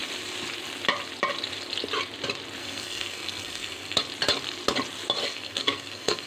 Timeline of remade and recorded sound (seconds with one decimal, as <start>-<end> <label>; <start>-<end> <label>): 0.0-2.6 recorded; 2.6-4.0 remade; 4.0-5.3 recorded; 5.3-6.3 remade